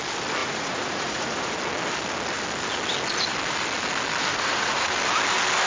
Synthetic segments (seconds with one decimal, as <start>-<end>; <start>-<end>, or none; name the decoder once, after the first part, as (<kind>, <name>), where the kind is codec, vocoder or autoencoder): 0.4-1.6 (vocoder, Vocos); 4.3-4.9